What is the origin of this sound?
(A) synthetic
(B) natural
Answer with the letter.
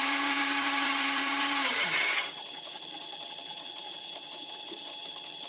A